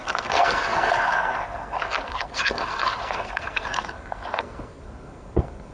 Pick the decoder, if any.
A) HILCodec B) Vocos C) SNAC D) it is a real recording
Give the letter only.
C